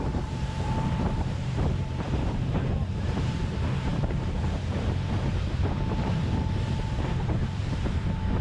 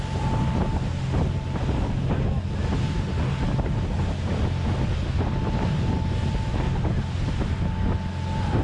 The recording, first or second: second